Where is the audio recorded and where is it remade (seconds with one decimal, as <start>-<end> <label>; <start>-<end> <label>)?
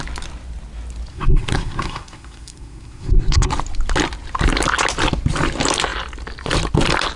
0.0-1.1 recorded; 1.1-3.5 remade; 3.5-7.2 recorded